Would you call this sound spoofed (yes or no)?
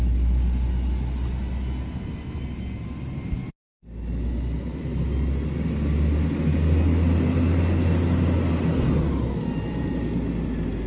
no